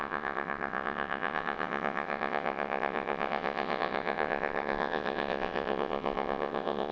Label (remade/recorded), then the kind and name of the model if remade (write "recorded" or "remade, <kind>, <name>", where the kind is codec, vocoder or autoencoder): remade, vocoder, WaveNeXt